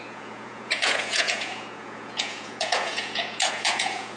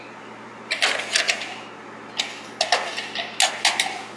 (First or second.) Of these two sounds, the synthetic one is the first